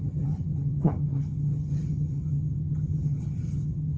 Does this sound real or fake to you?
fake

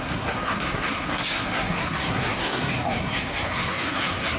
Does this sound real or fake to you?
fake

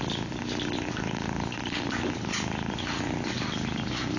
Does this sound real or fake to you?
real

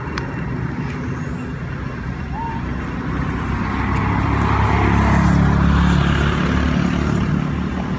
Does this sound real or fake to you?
real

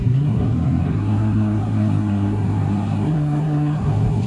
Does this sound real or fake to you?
fake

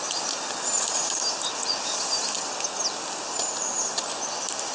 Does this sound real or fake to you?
real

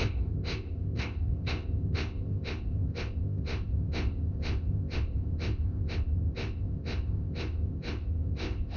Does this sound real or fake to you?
fake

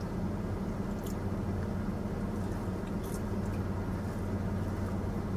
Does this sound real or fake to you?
real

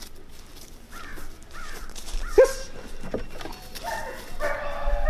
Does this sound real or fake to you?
real